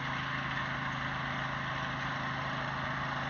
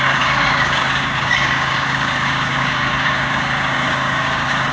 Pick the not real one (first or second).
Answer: second